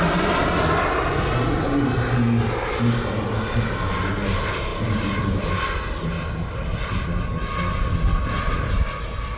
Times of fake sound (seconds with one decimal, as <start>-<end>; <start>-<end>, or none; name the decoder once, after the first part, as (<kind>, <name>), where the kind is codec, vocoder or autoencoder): 4.7-5.6 (vocoder, BigVGAN v2)